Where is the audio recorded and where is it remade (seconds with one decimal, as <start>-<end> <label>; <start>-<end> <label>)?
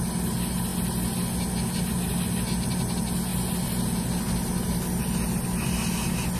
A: 0.0-6.4 recorded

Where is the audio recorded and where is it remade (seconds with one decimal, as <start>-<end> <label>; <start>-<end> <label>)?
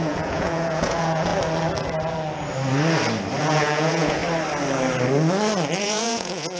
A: 0.0-1.3 remade; 1.3-3.4 recorded; 3.4-4.2 remade; 4.2-5.8 recorded; 5.8-6.6 remade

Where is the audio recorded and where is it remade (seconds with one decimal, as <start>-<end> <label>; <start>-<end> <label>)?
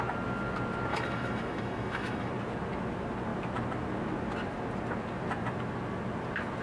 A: 0.0-0.9 recorded; 0.9-2.3 remade; 2.3-6.6 recorded